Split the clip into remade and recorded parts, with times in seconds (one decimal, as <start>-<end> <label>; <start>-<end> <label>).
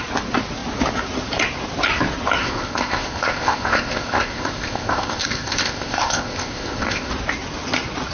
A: 0.0-2.4 recorded; 2.4-7.1 remade; 7.1-8.1 recorded